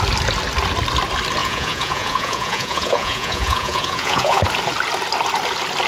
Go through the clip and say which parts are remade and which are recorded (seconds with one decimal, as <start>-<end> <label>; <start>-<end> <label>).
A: 0.0-1.4 recorded; 1.4-4.4 remade; 4.4-5.9 recorded